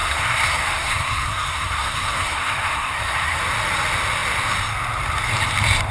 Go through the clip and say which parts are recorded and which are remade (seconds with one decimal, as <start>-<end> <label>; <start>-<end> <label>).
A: 0.0-3.4 remade; 3.4-5.9 recorded